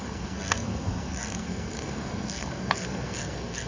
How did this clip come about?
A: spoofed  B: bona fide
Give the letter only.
A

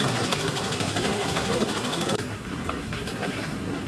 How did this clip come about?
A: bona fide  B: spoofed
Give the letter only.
B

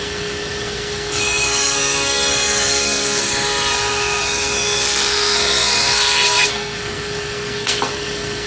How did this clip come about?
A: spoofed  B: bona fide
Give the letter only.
A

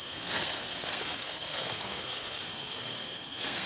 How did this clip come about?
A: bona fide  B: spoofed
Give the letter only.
B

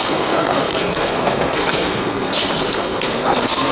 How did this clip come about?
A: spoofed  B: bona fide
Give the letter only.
A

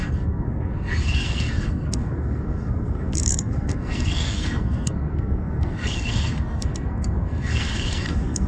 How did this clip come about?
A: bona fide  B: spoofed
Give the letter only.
B